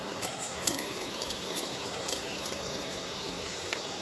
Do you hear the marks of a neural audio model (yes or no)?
yes